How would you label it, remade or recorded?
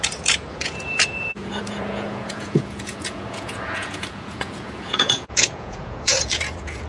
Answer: remade